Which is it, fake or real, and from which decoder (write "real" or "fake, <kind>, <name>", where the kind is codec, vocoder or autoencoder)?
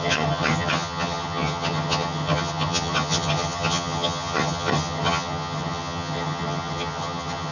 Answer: fake, vocoder, HiFi-GAN